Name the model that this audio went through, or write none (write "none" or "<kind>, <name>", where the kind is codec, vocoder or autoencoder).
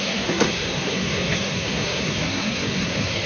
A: codec, SNAC